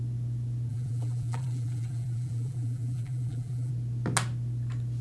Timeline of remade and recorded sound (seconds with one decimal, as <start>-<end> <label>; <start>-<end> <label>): 0.0-0.7 recorded; 0.7-3.7 remade; 3.7-5.0 recorded